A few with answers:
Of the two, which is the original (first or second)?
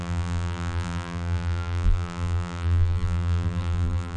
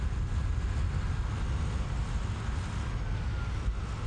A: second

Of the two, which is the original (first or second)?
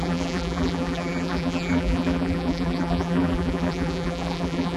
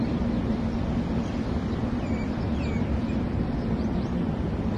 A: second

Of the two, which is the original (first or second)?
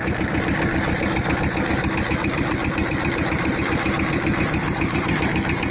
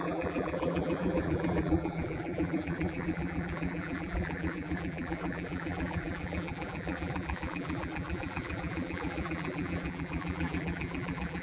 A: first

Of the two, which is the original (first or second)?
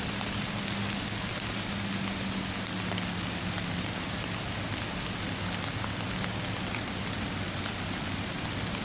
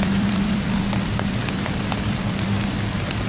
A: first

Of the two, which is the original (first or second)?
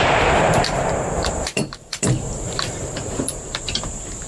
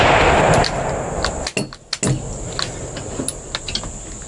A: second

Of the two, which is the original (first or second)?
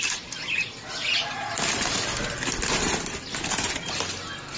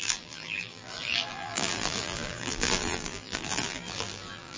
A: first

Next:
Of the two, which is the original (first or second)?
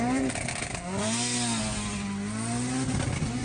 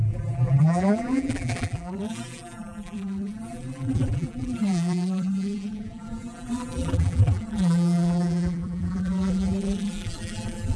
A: first